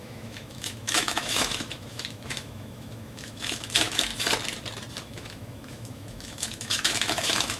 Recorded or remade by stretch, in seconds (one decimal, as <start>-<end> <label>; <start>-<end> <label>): 0.0-4.1 remade; 4.1-5.0 recorded; 5.0-7.6 remade